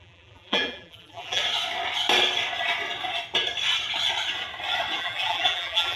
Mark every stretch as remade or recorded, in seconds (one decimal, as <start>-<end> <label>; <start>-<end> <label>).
0.0-1.4 remade; 1.4-5.0 recorded; 5.0-6.0 remade